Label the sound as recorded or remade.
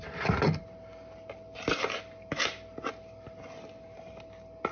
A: recorded